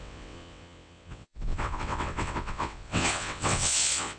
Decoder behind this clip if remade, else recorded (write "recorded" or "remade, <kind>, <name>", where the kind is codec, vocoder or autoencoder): remade, vocoder, WaveNeXt